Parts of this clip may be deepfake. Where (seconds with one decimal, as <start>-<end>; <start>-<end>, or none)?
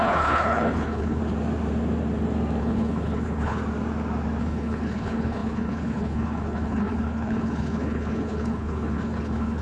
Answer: 0.0-1.2; 2.6-3.6; 4.4-9.6